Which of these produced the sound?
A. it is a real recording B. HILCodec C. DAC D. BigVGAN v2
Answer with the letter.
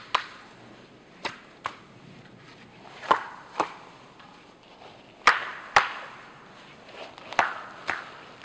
A